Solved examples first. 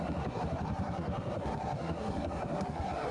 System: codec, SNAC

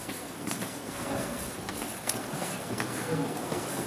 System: codec, SNAC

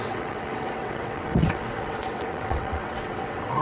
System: vocoder, WaveNeXt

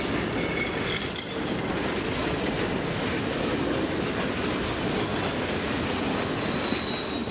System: none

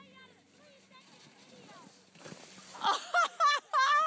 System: none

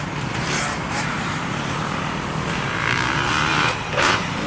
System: vocoder, BigVGAN v2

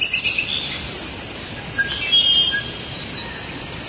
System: none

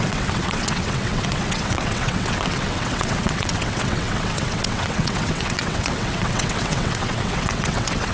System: vocoder, WaveNeXt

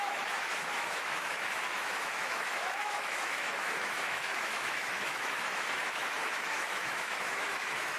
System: autoencoder, DAC-VAE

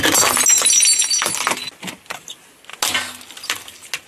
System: none